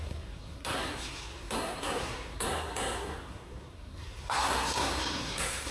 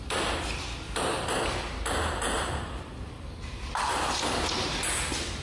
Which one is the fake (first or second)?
first